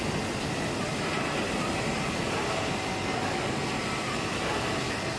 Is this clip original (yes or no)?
yes